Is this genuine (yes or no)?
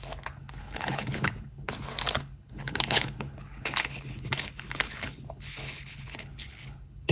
no